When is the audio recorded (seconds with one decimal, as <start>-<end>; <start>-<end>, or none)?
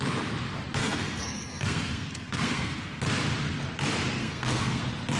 0.0-0.8; 3.0-4.2; 4.8-5.2